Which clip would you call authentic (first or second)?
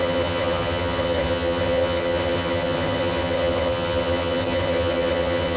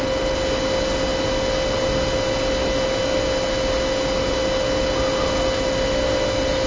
second